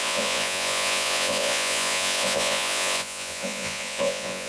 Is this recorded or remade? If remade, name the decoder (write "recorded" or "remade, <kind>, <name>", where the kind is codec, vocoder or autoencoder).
remade, vocoder, Vocos